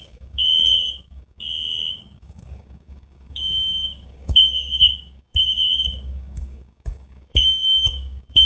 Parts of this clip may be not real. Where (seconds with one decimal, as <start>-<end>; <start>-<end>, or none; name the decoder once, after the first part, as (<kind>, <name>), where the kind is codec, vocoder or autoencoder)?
0.0-8.5 (codec, DAC)